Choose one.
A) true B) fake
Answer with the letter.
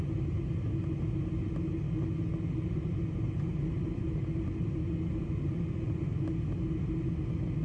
A